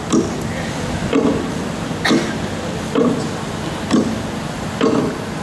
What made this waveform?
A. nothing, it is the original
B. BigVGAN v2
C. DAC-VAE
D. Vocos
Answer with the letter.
A